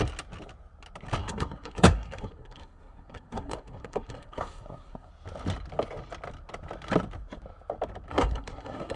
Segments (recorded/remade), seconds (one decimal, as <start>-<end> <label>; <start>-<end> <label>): 0.0-1.2 recorded; 1.2-5.1 remade; 5.1-8.1 recorded; 8.1-9.0 remade

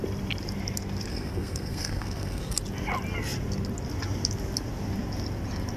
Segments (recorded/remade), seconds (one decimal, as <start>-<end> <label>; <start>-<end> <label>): 0.0-1.1 recorded; 1.1-2.6 remade; 2.6-5.8 recorded